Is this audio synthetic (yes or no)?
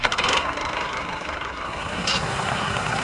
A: yes